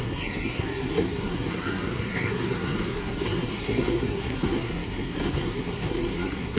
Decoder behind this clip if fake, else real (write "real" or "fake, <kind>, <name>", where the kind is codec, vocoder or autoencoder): fake, codec, SNAC